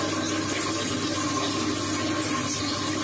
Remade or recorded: recorded